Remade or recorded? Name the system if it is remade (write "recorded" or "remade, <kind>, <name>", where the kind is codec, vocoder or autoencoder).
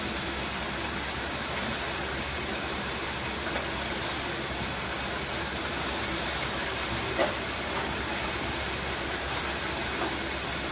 recorded